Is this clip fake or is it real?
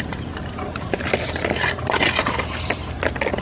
real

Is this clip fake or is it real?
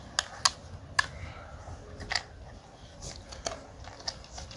real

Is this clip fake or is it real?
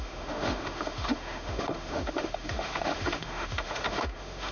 fake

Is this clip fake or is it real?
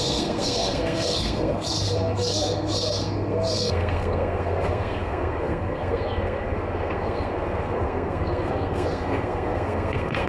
fake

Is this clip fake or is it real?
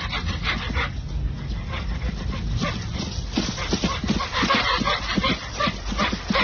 real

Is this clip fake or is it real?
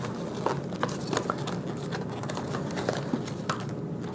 real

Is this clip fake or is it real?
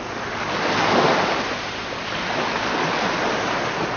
real